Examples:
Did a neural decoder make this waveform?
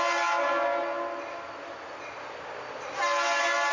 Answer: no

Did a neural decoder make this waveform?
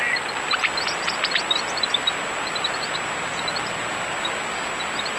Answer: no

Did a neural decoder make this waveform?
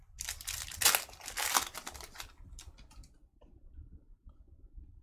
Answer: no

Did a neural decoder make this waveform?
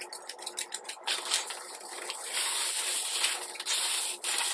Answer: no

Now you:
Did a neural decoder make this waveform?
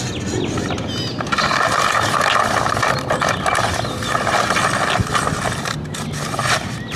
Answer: no